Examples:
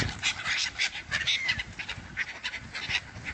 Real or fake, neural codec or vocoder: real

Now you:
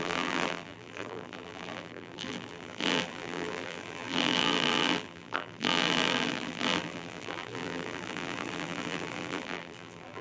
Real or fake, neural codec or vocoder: fake, vocoder, BigVGAN v2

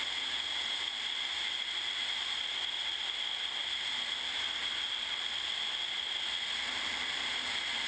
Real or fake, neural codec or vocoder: real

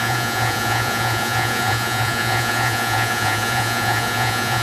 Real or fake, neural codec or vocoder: fake, vocoder, Vocos